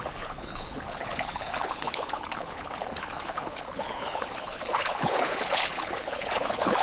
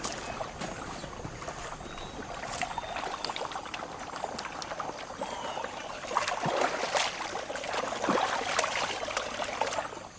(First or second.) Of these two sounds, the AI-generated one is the first